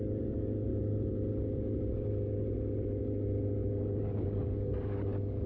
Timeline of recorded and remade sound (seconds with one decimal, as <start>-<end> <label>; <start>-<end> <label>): 0.0-0.7 remade; 0.7-4.0 recorded; 4.0-5.5 remade

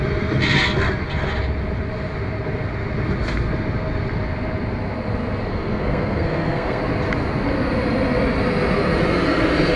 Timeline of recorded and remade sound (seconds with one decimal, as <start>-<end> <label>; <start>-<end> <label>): 0.0-5.5 recorded; 5.5-6.8 remade; 6.8-9.8 recorded

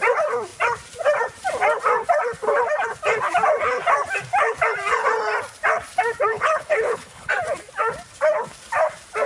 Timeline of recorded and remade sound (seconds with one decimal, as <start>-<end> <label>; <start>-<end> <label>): 0.0-6.3 recorded; 6.3-7.3 remade; 7.3-9.3 recorded